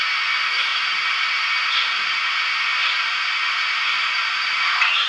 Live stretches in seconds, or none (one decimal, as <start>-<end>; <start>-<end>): 0.0-0.7; 2.3-5.1